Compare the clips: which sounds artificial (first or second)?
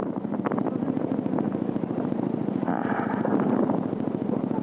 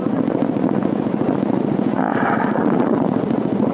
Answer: second